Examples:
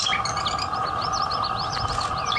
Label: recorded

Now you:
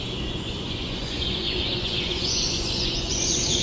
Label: remade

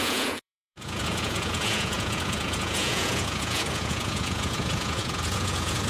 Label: remade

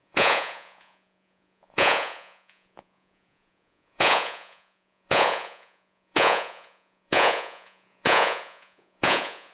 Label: remade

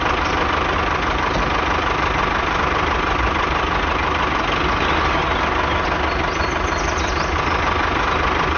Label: recorded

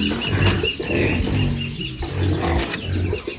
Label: recorded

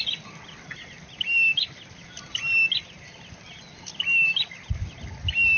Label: recorded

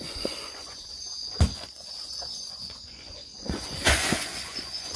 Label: remade